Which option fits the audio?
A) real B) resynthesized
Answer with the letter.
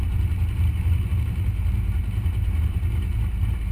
A